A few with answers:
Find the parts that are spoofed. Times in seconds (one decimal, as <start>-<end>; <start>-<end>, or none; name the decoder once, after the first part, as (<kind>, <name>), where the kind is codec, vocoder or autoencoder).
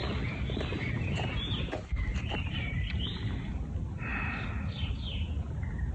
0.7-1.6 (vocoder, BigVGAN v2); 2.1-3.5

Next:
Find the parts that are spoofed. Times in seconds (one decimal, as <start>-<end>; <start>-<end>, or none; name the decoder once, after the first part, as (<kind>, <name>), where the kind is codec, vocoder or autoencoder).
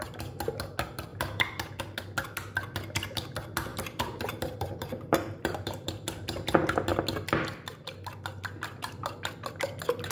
1.1-1.8 (vocoder, BigVGAN v2); 3.7-5.9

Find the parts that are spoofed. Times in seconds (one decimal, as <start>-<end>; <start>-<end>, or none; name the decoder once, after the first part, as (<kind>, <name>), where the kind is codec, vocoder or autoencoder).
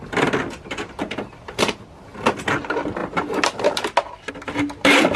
none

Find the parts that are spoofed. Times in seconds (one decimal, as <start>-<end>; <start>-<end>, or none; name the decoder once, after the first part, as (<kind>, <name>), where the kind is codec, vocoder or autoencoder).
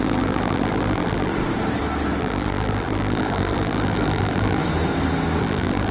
0.0-1.3 (vocoder, BigVGAN v2); 2.2-4.6; 5.4-5.9